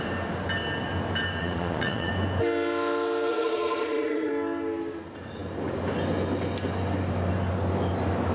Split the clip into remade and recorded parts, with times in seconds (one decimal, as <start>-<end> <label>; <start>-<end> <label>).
0.0-1.4 recorded; 1.4-2.1 remade; 2.1-3.3 recorded; 3.3-4.3 remade; 4.3-8.3 recorded